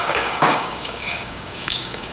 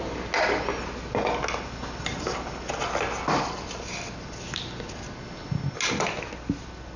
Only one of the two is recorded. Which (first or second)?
second